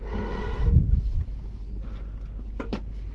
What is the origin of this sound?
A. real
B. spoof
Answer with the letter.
A